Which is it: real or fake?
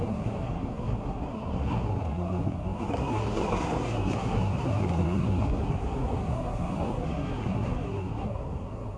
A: fake